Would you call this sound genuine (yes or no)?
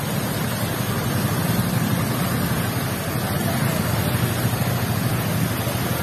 yes